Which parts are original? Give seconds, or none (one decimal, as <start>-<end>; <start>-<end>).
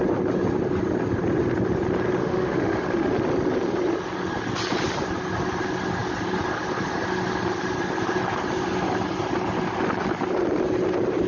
0.0-2.2; 3.1-11.3